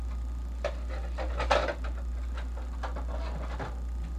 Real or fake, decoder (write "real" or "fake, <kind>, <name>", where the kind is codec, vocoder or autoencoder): real